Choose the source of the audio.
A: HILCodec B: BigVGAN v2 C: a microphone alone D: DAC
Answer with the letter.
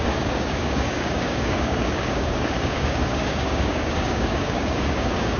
D